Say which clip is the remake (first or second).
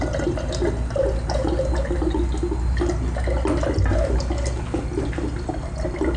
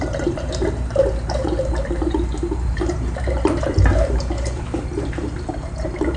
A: second